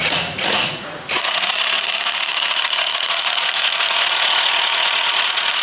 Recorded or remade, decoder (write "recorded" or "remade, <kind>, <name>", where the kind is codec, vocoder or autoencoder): remade, vocoder, Vocos